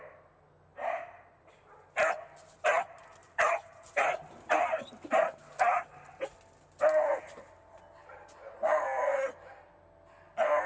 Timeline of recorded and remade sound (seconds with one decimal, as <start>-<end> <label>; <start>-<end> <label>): 0.0-0.7 recorded; 0.7-1.6 remade; 1.6-3.2 recorded; 3.2-4.1 remade; 4.1-10.7 recorded